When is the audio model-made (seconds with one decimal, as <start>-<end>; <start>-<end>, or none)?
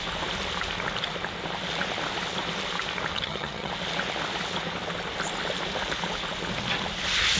3.1-3.7